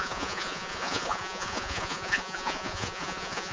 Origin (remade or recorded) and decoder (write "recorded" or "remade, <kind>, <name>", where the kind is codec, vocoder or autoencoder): remade, vocoder, Vocos